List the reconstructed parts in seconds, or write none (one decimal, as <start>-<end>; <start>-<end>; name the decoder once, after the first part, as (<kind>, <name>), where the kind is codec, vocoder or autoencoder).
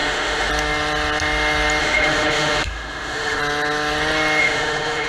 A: 0.0-0.5 (autoencoder, DAC-VAE); 1.8-3.4; 4.4-5.1